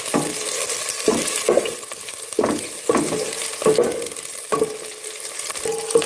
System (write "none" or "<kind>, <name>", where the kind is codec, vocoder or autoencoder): none